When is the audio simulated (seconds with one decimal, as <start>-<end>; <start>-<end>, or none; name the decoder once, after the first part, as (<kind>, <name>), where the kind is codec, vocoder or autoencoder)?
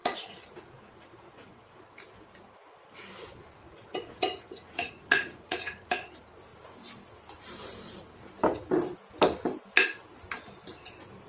0.0-1.6 (vocoder, Vocos); 3.6-5.9